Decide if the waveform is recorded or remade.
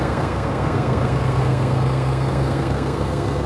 remade